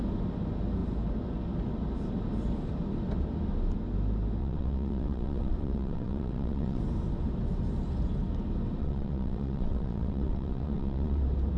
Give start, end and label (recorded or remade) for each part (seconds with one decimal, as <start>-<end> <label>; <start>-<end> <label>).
0.0-4.4 recorded; 4.4-6.8 remade; 6.8-8.8 recorded; 8.8-11.2 remade; 11.2-11.6 recorded